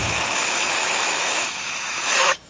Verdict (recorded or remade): remade